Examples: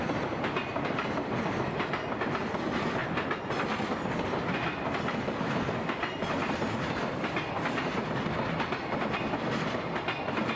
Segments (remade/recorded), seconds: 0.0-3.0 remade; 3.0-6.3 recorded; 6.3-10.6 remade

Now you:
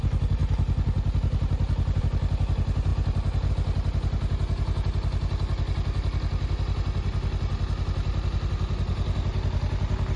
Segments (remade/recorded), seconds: 0.0-10.2 recorded

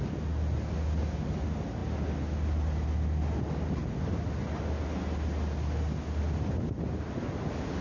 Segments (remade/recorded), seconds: 0.0-7.8 recorded

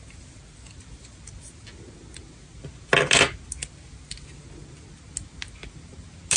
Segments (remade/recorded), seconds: 0.0-6.4 recorded

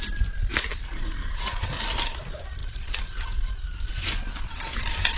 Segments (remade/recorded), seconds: 0.0-5.2 recorded

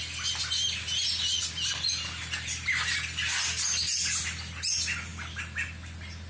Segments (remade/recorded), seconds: 0.0-6.3 recorded